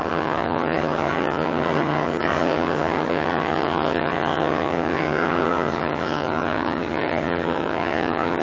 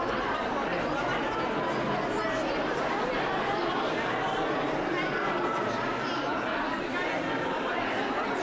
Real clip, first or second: second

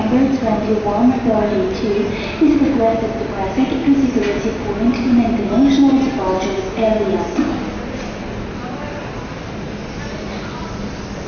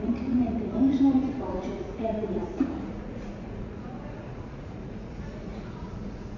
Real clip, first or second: first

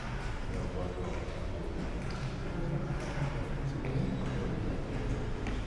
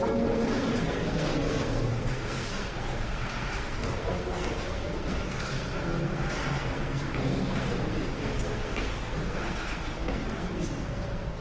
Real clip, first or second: first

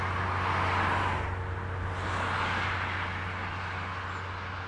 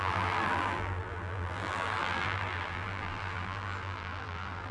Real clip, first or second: first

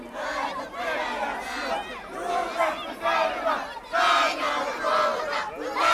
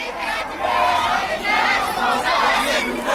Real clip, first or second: first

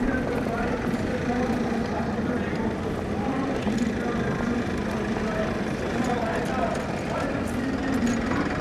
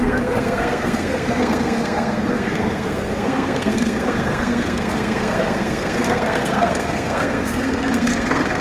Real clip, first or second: first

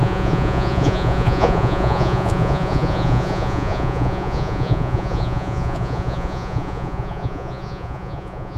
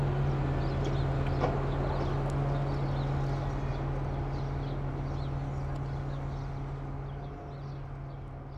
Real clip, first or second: second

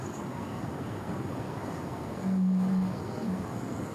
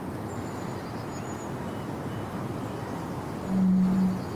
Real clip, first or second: second